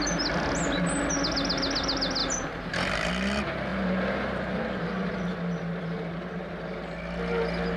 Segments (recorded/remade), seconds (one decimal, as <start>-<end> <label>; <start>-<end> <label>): 0.0-2.2 recorded; 2.2-3.1 remade; 3.1-3.7 recorded; 3.7-5.6 remade; 5.6-7.8 recorded